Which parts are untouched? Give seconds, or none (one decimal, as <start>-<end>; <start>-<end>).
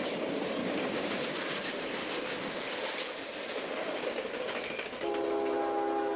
0.0-0.6; 2.7-3.8; 5.1-6.2